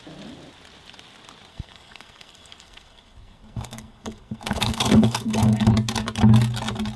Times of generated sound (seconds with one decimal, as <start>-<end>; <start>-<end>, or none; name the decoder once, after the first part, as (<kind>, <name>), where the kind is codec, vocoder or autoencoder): 1.5-5.7 (codec, SNAC)